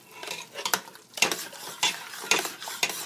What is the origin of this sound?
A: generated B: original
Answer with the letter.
B